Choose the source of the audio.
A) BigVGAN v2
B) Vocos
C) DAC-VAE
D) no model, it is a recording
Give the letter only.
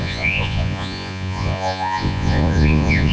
B